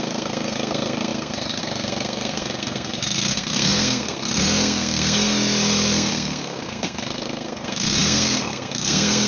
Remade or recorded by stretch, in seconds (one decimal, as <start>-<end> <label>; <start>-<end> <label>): 0.0-9.3 remade